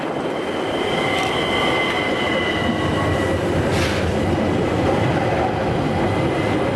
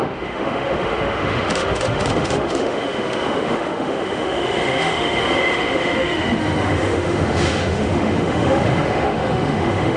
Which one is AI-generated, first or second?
second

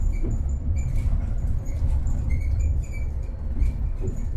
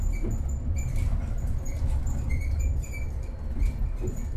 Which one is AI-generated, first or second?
first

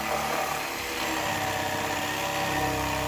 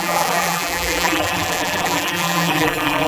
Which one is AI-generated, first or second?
second